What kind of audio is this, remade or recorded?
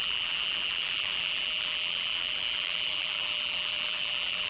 remade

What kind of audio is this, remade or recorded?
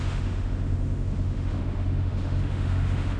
remade